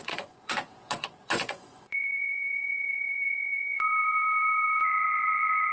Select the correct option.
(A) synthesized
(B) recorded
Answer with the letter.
A